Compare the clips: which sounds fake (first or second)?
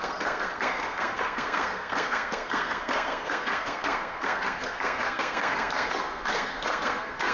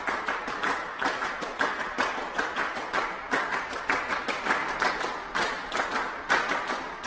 first